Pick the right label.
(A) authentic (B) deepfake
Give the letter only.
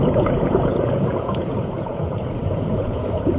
B